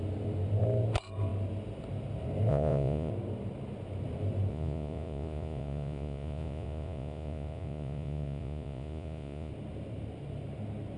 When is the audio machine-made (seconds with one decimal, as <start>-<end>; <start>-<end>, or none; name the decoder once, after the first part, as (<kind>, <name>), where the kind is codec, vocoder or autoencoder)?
2.5-3.1 (vocoder, Vocos); 4.5-9.5